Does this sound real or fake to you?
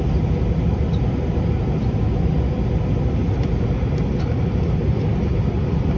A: fake